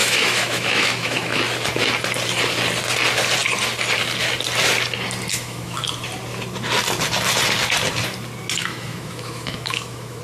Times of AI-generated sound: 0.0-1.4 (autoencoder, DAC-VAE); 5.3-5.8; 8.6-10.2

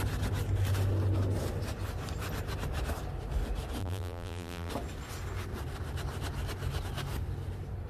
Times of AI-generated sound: 3.8-4.7 (vocoder, BigVGAN v2)

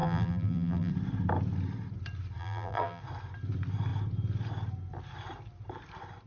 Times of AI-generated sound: 0.0-0.9 (vocoder, BigVGAN v2); 2.4-3.0

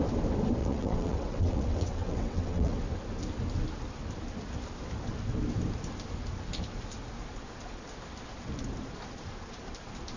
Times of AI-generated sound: 0.6-2.8 (vocoder, WaveNeXt)

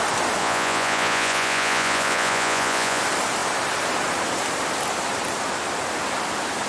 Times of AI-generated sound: 0.4-3.0 (vocoder, Vocos)

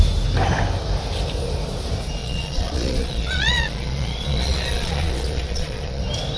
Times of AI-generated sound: 2.2-6.0 (vocoder, Vocos)

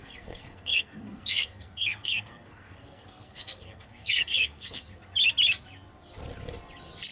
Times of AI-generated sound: 0.0-4.9 (codec, SNAC)

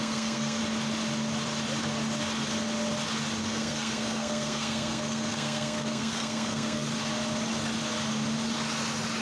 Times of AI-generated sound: 0.0-0.6 (codec, SNAC); 3.4-6.9